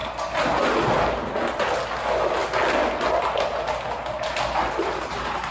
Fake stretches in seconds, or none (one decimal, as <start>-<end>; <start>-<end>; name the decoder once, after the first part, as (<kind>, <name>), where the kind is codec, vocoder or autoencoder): none